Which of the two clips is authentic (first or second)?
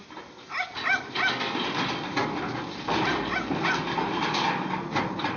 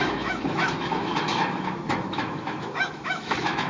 first